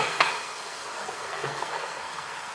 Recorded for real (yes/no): no